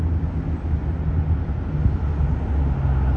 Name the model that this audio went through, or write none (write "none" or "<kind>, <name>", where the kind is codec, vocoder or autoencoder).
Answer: none